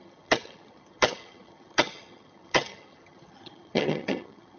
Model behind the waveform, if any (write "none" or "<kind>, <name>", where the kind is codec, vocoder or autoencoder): vocoder, HiFi-GAN